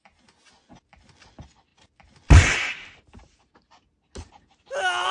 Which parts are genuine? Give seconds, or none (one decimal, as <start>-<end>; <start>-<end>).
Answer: 0.0-5.1